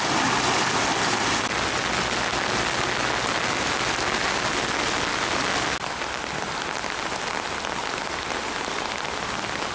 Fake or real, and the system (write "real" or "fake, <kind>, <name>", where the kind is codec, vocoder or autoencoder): real